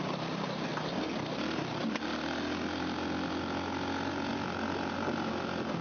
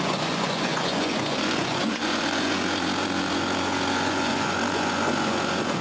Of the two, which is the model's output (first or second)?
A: second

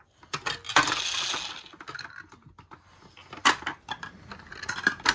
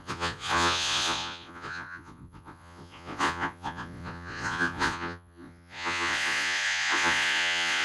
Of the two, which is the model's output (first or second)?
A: second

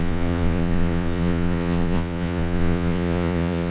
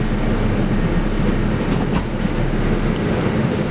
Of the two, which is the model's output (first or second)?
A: first